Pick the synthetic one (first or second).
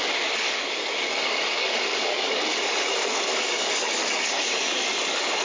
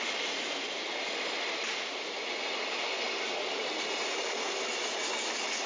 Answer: first